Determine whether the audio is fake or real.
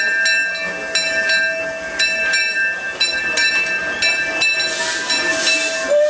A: real